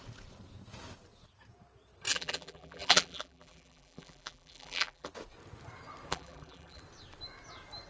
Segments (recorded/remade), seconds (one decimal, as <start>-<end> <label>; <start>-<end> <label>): 0.0-2.1 recorded; 2.1-5.1 remade; 5.1-6.1 recorded; 6.1-6.8 remade; 6.8-7.9 recorded

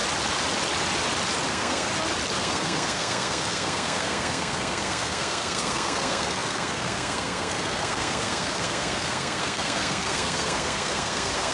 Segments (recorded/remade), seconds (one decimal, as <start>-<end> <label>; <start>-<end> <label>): 0.0-1.5 recorded; 1.5-1.9 remade; 1.9-2.4 recorded; 2.4-11.5 remade

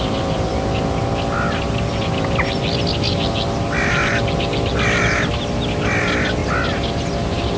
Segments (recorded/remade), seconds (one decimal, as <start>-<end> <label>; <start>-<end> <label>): 0.0-7.6 recorded